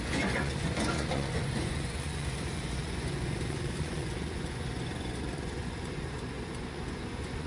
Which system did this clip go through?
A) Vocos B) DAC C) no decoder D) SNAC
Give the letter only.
A